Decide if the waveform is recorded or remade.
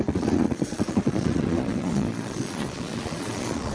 remade